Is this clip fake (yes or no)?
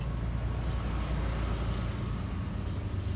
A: no